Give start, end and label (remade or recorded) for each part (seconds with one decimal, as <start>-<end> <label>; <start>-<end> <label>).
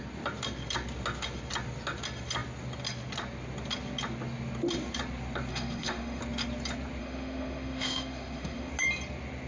0.0-5.5 recorded; 5.5-6.2 remade; 6.2-7.0 recorded; 7.0-8.7 remade; 8.7-9.5 recorded